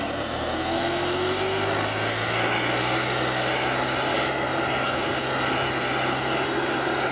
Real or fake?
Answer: real